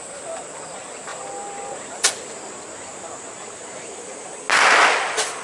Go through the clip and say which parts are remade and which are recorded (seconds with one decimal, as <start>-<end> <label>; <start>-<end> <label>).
0.0-1.1 recorded; 1.1-2.1 remade; 2.1-5.4 recorded

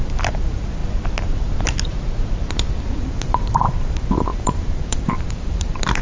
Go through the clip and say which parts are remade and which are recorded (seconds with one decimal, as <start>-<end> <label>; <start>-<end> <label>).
0.0-0.8 remade; 0.8-3.0 recorded; 3.0-6.0 remade